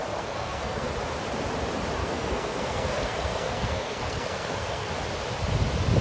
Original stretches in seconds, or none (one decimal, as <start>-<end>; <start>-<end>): 0.9-2.0; 4.9-6.0